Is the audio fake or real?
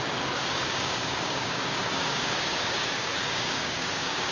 fake